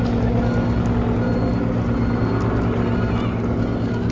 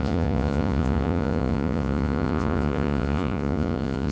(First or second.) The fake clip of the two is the second